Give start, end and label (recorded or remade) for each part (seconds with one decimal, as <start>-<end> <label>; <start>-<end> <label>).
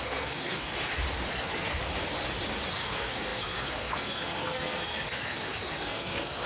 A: 0.0-0.7 remade; 0.7-1.3 recorded; 1.3-1.8 remade; 1.8-2.7 recorded; 2.7-6.5 remade